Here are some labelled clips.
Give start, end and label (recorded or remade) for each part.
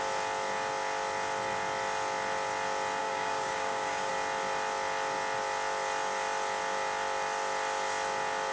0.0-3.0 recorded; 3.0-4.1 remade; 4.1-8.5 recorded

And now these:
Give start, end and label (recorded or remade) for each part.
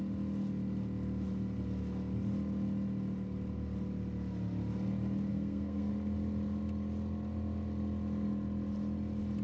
0.0-5.3 recorded; 5.3-5.9 remade; 5.9-9.4 recorded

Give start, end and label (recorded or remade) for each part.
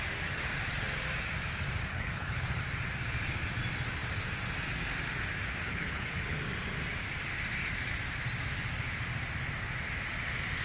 0.0-1.9 recorded; 1.9-2.6 remade; 2.6-5.6 recorded; 5.6-6.4 remade; 6.4-10.6 recorded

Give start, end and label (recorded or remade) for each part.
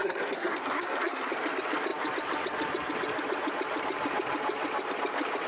0.0-1.3 remade; 1.3-5.5 recorded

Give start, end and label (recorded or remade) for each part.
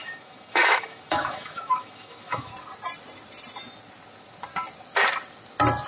0.0-2.5 remade; 2.5-5.9 recorded